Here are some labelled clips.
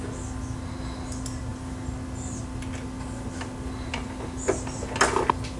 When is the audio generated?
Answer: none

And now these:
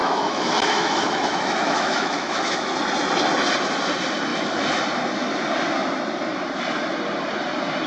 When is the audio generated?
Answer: 0.0-2.7; 4.3-4.8